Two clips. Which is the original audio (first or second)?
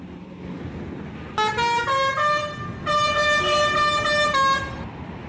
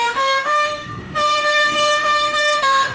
first